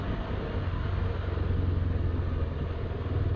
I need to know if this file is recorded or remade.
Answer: recorded